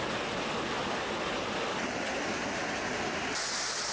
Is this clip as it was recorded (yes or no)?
yes